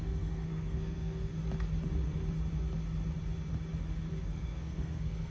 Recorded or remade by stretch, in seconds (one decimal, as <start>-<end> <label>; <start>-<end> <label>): 0.0-1.3 remade; 1.3-4.2 recorded; 4.2-5.3 remade